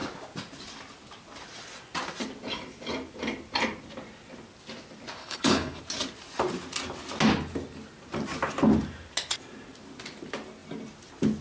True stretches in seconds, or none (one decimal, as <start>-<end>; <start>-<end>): 0.0-5.2; 5.8-11.4